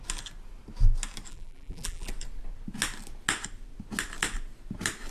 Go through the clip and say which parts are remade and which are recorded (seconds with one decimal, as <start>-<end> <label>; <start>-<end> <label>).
0.0-1.3 recorded; 1.3-2.1 remade; 2.1-5.1 recorded